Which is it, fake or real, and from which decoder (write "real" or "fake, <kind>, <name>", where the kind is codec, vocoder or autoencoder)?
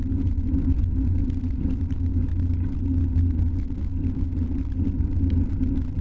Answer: real